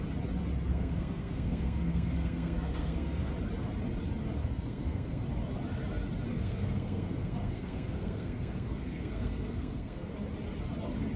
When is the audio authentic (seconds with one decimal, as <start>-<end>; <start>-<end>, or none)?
0.0-0.7; 3.3-4.4; 5.3-6.3; 10.1-11.2